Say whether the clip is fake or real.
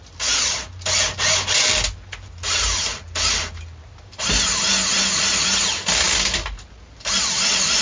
real